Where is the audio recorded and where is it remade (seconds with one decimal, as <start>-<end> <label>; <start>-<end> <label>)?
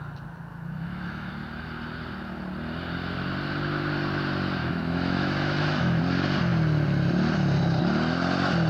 0.0-0.5 recorded; 0.5-1.3 remade; 1.3-4.6 recorded; 4.6-6.0 remade; 6.0-8.7 recorded